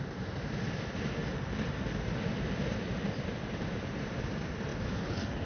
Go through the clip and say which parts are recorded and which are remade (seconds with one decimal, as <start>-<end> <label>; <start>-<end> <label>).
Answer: 0.0-1.2 recorded; 1.2-4.2 remade; 4.2-4.7 recorded; 4.7-5.5 remade